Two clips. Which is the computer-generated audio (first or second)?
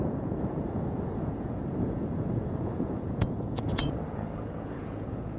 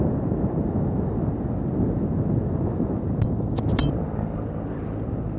first